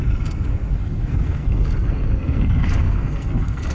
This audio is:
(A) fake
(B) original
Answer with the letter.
A